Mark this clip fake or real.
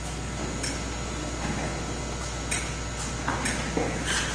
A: real